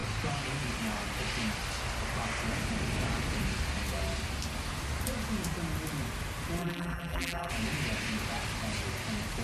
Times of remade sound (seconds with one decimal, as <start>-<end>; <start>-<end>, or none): 6.6-7.5